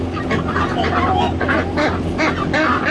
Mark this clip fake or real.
real